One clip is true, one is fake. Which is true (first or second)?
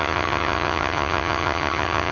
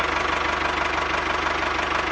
second